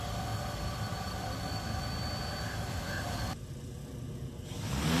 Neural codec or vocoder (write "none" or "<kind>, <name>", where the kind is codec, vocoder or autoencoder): none